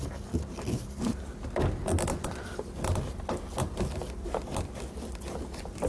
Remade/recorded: recorded